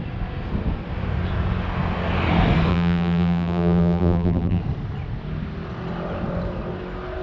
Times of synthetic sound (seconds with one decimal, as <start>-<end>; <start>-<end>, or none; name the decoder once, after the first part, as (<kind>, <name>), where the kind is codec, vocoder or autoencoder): 2.7-4.6 (vocoder, BigVGAN v2)